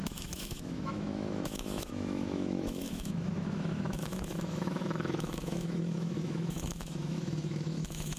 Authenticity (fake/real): fake